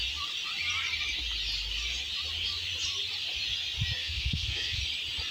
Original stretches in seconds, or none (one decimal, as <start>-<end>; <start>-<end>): 0.0-4.0; 4.8-5.3